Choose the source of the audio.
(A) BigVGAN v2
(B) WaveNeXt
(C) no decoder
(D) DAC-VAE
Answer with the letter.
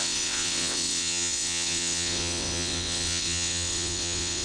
B